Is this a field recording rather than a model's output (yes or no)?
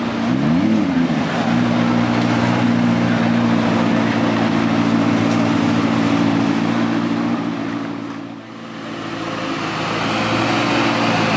yes